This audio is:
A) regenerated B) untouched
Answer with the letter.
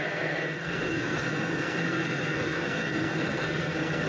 A